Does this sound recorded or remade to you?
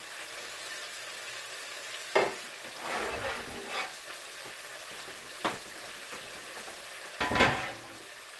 recorded